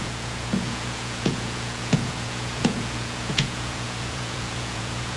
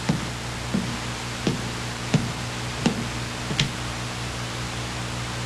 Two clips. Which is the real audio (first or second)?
second